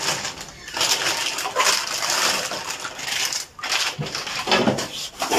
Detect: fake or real real